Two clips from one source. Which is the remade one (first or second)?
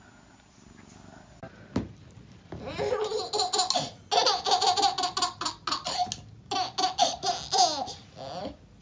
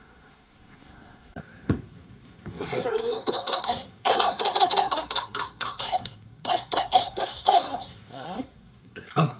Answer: second